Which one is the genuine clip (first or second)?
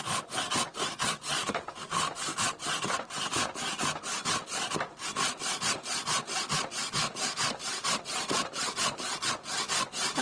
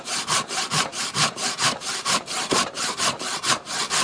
first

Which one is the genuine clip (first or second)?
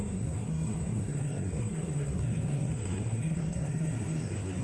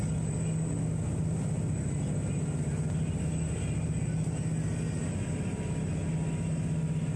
second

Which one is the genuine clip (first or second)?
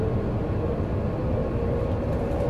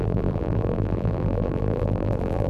first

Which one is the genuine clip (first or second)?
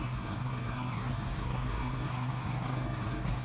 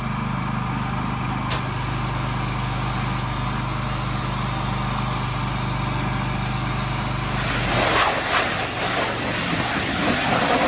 second